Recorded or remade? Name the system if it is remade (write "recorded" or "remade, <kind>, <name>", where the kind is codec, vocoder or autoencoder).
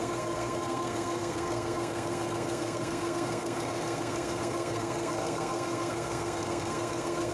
remade, codec, SNAC